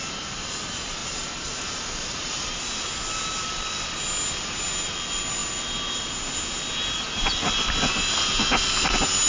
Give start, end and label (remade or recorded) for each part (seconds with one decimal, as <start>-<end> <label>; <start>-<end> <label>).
0.0-1.0 recorded; 1.0-1.8 remade; 1.8-9.3 recorded